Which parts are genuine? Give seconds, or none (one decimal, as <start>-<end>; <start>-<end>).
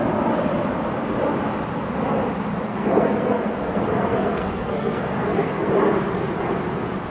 0.0-2.7; 5.7-7.1